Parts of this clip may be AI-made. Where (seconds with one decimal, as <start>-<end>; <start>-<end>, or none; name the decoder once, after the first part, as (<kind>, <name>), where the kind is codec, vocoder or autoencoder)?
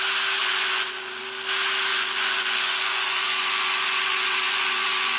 0.4-1.2 (vocoder, Vocos); 1.9-5.2